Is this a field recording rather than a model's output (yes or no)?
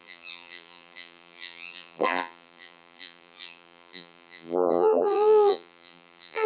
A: no